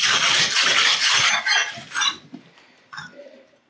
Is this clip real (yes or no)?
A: yes